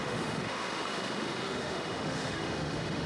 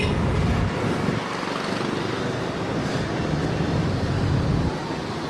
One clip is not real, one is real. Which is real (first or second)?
second